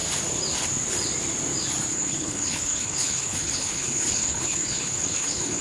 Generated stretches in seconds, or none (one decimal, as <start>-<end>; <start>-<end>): 1.9-5.6